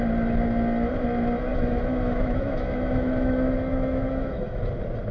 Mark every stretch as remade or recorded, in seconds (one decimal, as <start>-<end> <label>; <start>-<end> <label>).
0.0-1.5 recorded; 1.5-4.6 remade; 4.6-5.1 recorded